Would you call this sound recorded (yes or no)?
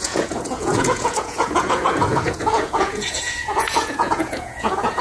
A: no